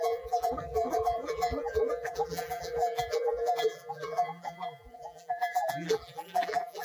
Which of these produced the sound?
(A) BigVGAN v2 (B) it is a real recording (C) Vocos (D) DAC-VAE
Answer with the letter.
A